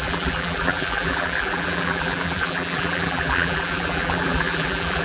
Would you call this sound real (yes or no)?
no